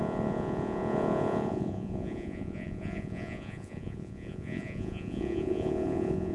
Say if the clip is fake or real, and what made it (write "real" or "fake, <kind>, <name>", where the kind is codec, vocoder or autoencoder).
fake, vocoder, Vocos